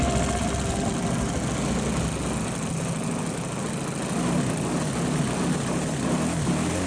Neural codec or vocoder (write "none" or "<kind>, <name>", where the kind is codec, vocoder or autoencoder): none